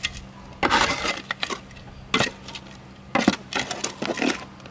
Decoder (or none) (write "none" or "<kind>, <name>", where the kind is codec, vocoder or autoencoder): none